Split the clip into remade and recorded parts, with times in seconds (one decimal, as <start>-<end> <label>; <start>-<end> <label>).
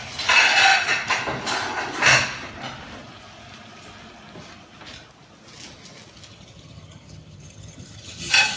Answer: 0.0-6.3 recorded; 6.3-8.6 remade